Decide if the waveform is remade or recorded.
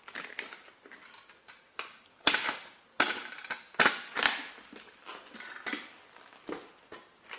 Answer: recorded